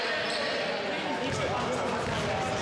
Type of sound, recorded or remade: recorded